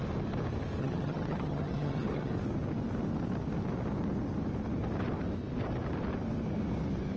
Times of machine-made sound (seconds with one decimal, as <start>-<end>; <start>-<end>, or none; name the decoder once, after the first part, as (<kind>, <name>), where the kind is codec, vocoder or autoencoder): 0.8-2.3 (vocoder, HiFi-GAN)